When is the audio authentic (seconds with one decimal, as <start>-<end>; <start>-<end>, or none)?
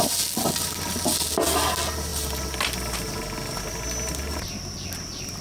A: 0.0-5.4